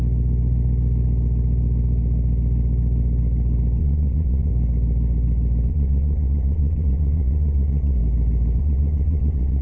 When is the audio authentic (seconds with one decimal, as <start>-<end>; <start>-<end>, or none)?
0.0-3.8; 4.5-5.7; 8.0-8.6